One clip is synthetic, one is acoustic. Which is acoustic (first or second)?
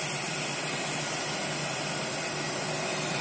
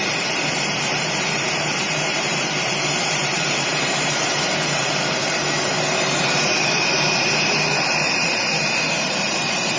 first